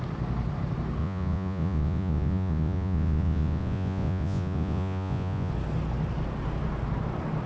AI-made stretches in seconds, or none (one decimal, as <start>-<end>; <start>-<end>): 1.0-5.5